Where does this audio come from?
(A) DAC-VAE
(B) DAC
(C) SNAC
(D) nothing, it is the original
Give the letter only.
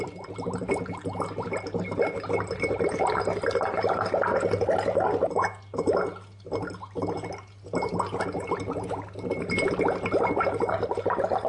D